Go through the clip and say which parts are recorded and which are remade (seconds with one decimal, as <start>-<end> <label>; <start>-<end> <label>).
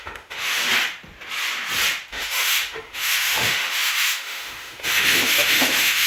0.0-0.6 remade; 0.6-2.1 recorded; 2.1-6.1 remade